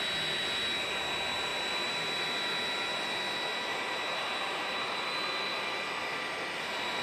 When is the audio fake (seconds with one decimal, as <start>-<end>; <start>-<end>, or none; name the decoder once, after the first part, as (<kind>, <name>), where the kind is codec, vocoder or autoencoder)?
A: 3.7-5.7 (vocoder, BigVGAN v2)

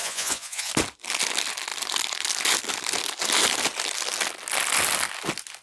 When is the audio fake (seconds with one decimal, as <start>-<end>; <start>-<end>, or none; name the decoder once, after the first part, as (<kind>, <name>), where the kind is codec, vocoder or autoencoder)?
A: 0.0-0.7 (vocoder, Vocos)

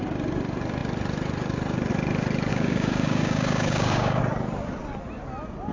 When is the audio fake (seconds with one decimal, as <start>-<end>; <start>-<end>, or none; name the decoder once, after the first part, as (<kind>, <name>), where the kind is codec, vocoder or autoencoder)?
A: 2.5-4.2 (codec, DAC)